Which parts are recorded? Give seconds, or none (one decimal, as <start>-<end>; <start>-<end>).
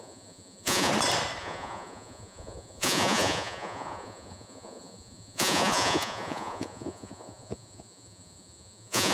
0.9-1.4